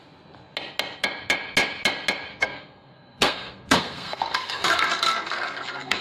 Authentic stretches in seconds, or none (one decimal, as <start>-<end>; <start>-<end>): 0.0-2.3